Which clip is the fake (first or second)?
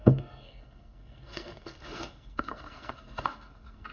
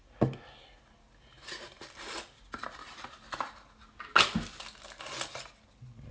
first